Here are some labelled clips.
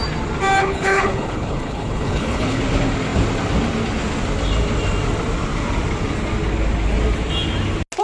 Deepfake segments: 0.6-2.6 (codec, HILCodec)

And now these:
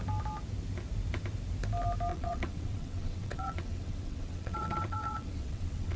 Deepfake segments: 2.1-6.0 (vocoder, WaveNeXt)

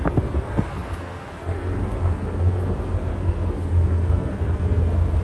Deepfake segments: 0.0-5.2 (codec, SNAC)